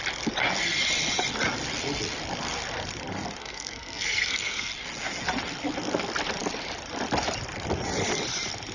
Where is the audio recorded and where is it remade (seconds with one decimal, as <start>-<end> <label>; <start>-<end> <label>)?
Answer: 0.0-3.4 recorded; 3.4-4.7 remade; 4.7-8.7 recorded